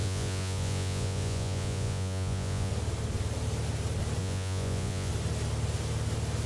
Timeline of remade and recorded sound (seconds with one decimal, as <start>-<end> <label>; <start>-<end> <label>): 0.0-2.7 remade; 2.7-4.2 recorded; 4.2-5.1 remade; 5.1-6.5 recorded